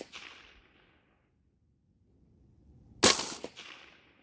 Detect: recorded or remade recorded